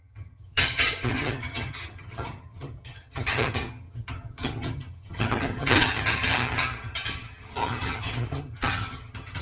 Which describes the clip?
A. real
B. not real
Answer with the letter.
B